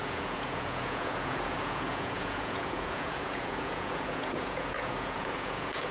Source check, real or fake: fake